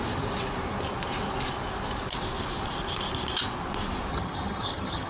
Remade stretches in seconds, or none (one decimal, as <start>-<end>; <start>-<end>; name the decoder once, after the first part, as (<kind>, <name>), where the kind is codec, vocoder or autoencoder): 4.1-5.1 (vocoder, HiFi-GAN)